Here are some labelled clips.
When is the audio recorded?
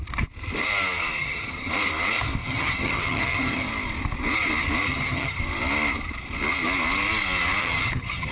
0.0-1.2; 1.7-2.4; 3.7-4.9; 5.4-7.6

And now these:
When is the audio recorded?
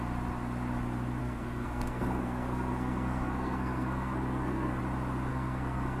0.0-1.2; 4.8-5.3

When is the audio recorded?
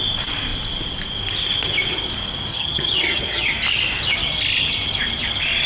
0.0-2.5; 3.5-5.7